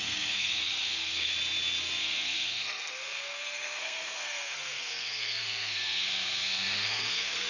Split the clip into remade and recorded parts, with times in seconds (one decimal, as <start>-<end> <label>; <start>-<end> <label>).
0.0-1.3 remade; 1.3-2.0 recorded; 2.0-7.5 remade